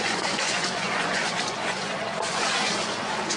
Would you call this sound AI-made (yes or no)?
yes